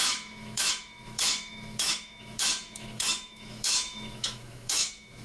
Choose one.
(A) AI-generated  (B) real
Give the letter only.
A